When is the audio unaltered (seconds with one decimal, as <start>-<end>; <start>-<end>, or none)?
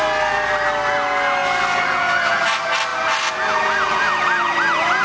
0.0-5.0